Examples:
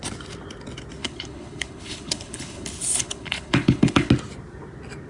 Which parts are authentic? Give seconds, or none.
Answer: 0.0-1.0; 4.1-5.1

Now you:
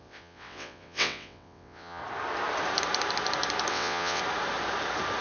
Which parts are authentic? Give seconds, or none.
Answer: 2.0-3.7; 4.2-5.2

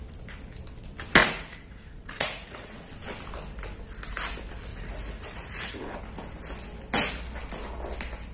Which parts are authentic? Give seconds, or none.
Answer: 0.0-1.2; 2.9-4.7; 6.0-8.3

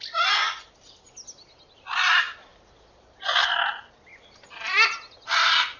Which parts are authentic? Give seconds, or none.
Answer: 0.0-5.8